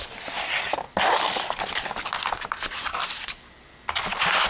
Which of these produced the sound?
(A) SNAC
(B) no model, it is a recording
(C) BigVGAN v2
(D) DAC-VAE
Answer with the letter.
B